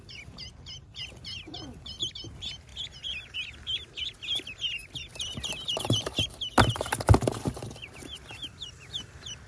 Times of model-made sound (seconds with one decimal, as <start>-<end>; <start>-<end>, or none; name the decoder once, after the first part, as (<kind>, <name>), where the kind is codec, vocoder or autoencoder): 4.8-6.3 (vocoder, BigVGAN v2); 7.8-9.5